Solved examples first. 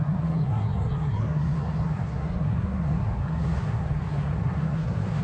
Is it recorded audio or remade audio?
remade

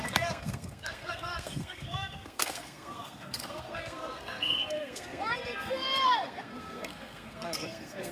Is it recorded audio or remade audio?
remade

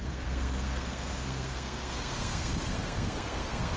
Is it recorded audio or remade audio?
remade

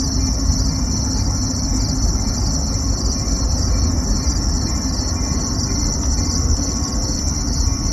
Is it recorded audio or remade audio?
recorded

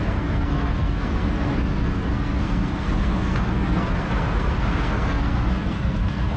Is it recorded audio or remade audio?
remade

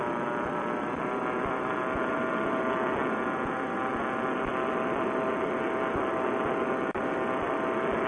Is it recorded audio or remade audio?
recorded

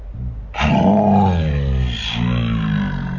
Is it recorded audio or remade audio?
recorded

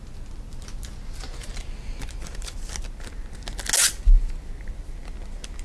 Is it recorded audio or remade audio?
recorded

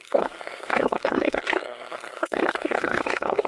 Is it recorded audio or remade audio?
remade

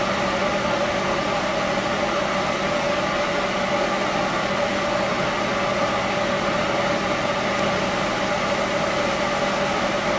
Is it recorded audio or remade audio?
recorded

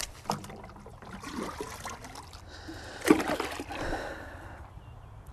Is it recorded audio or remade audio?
recorded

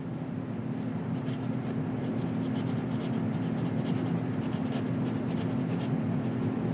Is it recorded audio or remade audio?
recorded